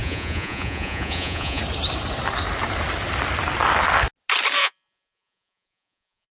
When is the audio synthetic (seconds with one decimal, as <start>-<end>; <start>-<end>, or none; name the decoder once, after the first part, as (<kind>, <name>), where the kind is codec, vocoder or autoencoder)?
0.0-1.6 (vocoder, Vocos); 4.6-6.3